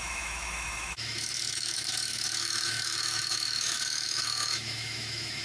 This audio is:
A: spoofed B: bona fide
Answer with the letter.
A